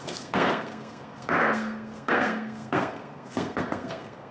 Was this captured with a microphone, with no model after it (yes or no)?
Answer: no